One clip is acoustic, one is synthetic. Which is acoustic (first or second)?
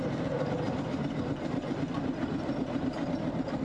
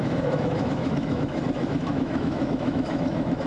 first